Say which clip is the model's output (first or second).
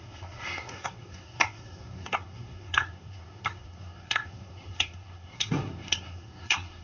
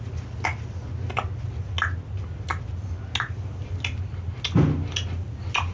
first